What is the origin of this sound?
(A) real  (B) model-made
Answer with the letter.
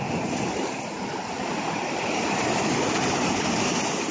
A